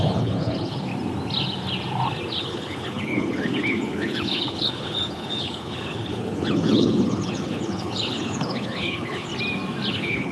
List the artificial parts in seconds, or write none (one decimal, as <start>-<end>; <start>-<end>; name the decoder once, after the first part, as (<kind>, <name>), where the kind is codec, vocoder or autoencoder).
0.0-0.9 (codec, HILCodec); 2.4-9.3; 9.9-10.3